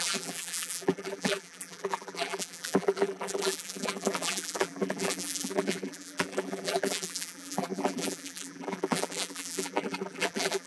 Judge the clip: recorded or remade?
remade